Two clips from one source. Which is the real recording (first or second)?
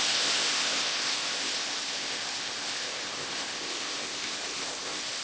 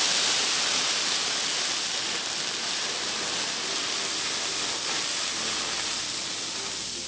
second